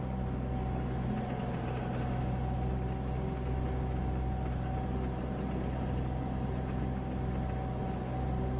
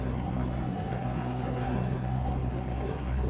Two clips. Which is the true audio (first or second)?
first